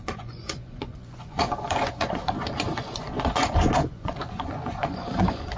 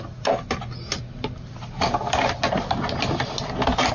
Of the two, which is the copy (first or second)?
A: first